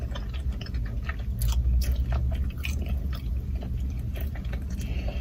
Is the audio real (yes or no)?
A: yes